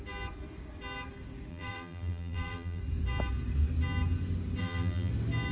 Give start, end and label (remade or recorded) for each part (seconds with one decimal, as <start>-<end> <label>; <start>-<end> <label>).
0.0-1.5 recorded; 1.5-2.8 remade; 2.8-4.6 recorded; 4.6-5.1 remade; 5.1-5.5 recorded